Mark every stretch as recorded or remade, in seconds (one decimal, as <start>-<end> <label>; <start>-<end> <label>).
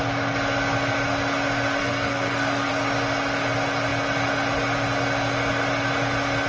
0.0-1.8 recorded; 1.8-2.7 remade; 2.7-6.5 recorded